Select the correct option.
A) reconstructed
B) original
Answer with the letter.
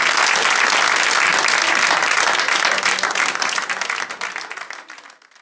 B